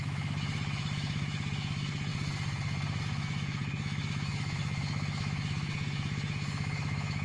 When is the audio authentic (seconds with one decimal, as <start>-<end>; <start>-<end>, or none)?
2.1-3.0